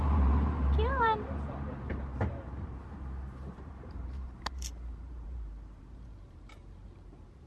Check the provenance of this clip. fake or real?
fake